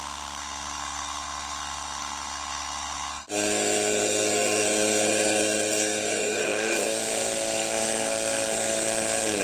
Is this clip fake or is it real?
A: fake